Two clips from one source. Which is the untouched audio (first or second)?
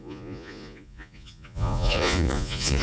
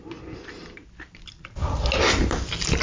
second